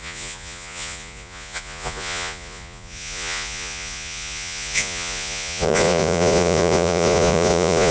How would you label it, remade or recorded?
remade